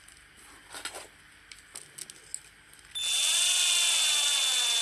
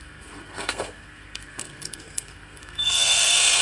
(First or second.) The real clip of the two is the first